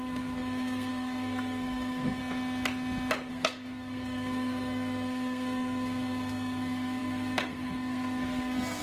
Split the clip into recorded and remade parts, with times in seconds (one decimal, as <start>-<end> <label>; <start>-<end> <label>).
0.0-2.2 remade; 2.2-3.3 recorded; 3.3-8.8 remade